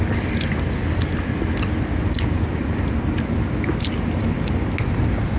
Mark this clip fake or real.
real